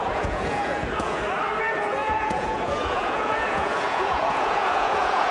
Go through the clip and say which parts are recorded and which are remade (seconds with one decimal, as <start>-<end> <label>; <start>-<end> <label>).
0.0-1.2 remade; 1.2-2.0 recorded; 2.0-5.3 remade